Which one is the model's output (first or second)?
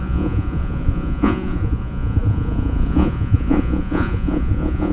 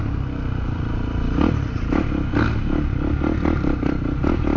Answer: first